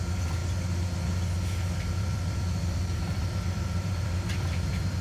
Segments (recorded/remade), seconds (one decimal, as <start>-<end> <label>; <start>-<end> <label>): 0.0-0.4 remade; 0.4-2.0 recorded; 2.0-5.0 remade